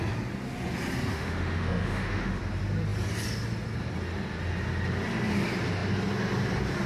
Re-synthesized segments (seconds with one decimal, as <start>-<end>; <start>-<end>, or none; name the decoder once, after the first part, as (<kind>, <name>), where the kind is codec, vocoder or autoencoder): 1.1-2.4 (autoencoder, DAC-VAE)